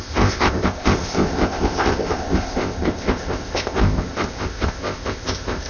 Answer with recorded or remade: remade